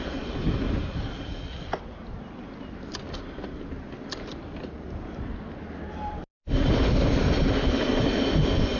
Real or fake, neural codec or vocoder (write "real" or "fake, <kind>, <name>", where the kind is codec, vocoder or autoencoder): real